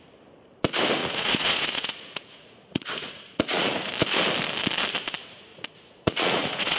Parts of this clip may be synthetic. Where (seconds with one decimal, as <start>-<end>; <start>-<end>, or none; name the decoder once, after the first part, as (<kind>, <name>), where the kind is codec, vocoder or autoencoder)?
1.0-3.9 (vocoder, Vocos); 5.5-6.8